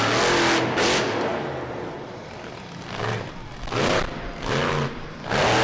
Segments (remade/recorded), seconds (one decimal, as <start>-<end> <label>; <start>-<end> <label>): 0.0-5.6 recorded